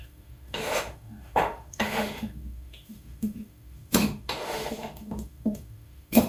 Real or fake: fake